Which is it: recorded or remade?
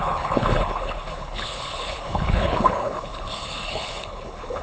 remade